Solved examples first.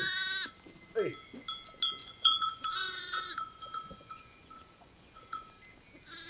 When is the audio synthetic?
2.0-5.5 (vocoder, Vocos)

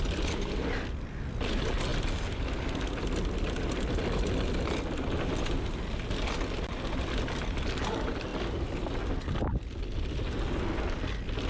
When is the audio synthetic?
none